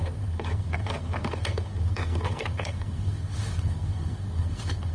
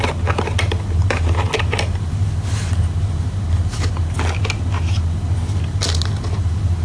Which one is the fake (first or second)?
first